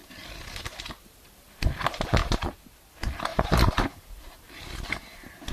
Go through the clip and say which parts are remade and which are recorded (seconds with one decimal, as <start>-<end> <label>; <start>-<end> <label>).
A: 0.0-2.2 recorded; 2.2-2.9 remade; 2.9-3.3 recorded; 3.3-4.6 remade; 4.6-5.5 recorded